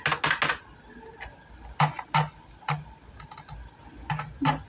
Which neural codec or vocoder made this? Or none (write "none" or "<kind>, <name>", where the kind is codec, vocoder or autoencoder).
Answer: none